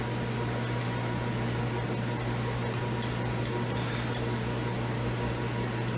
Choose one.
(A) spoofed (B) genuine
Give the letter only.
B